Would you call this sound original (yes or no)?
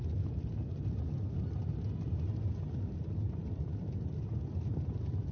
yes